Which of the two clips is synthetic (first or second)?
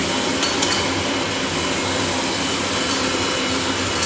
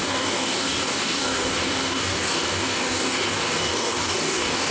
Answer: second